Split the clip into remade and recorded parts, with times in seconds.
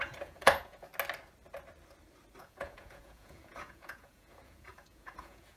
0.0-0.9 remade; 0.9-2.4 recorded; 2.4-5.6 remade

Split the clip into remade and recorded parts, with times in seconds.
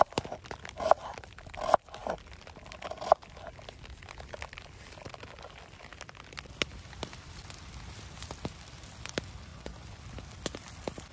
0.0-9.5 recorded; 9.5-10.0 remade; 10.0-11.1 recorded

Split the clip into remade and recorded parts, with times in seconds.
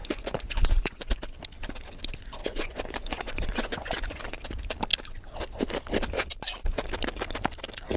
0.0-1.1 remade; 1.1-2.4 recorded; 2.4-4.2 remade; 4.2-8.0 recorded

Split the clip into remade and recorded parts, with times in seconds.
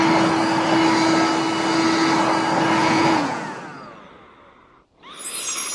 0.0-2.8 recorded; 2.8-3.6 remade; 3.6-5.7 recorded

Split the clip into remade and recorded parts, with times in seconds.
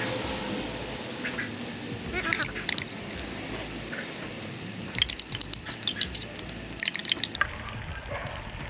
0.0-8.7 recorded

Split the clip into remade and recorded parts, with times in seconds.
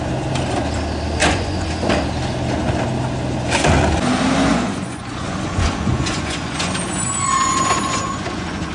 0.0-1.2 recorded; 1.2-1.9 remade; 1.9-4.5 recorded; 4.5-8.7 remade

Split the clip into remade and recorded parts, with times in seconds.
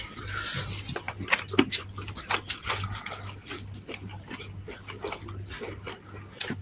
0.0-6.6 recorded